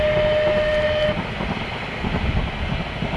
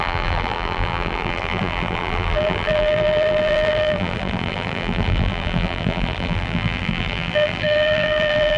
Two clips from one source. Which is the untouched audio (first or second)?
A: first